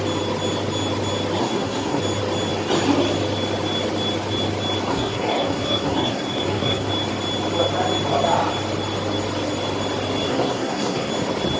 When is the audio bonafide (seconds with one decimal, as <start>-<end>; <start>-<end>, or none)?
0.0-1.4; 2.0-4.9; 6.9-10.3; 11.1-11.6